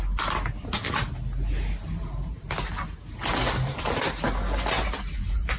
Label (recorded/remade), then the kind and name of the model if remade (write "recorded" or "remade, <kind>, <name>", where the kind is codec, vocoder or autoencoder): recorded